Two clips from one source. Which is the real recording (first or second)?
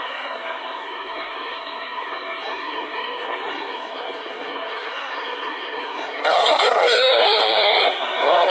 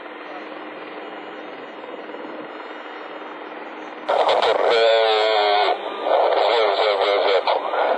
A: second